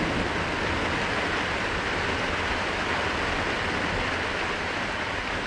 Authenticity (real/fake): real